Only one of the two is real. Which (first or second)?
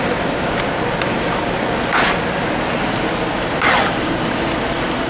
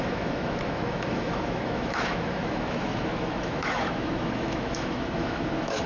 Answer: first